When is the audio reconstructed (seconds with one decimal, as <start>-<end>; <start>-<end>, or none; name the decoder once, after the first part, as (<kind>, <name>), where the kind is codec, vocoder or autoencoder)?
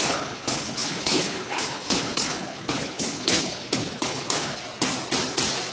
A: 0.0-4.6 (codec, HILCodec)